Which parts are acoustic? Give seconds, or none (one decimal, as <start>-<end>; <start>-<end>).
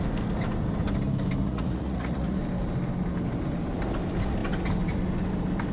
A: 0.0-1.4; 2.4-5.7